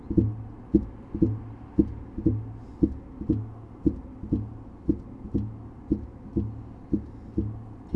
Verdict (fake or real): real